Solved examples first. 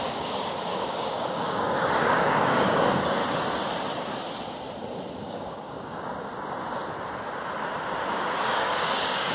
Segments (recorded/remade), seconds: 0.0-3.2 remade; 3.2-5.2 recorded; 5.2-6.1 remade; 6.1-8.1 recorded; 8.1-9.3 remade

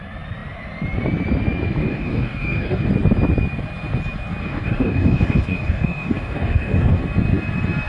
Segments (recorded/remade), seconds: 0.0-1.8 recorded; 1.8-2.9 remade; 2.9-4.4 recorded; 4.4-7.0 remade; 7.0-7.9 recorded

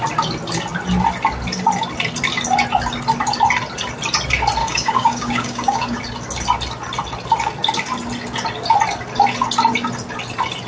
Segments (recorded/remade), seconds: 0.0-4.6 recorded; 4.6-6.0 remade; 6.0-10.7 recorded

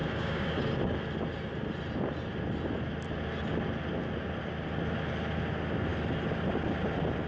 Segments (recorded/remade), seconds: 0.0-0.6 remade; 0.6-7.3 recorded

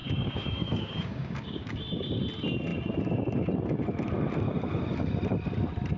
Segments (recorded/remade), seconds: 0.0-2.2 remade; 2.2-6.0 recorded

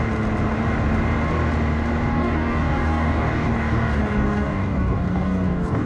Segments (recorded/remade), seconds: 0.0-2.1 recorded; 2.1-5.9 remade